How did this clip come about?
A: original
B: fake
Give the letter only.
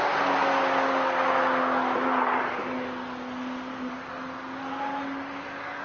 A